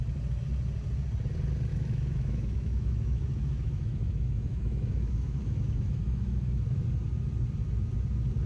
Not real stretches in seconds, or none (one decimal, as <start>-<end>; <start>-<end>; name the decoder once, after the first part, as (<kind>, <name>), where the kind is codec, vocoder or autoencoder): 1.7-6.8 (autoencoder, DAC-VAE)

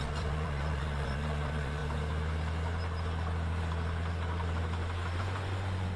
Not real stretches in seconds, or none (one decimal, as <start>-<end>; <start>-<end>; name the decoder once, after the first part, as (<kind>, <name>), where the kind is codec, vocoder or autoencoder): 0.0-1.8 (vocoder, Vocos); 5.2-6.0